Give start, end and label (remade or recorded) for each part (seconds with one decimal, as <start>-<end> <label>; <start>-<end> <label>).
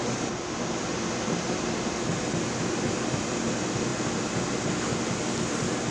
0.0-3.3 remade; 3.3-5.9 recorded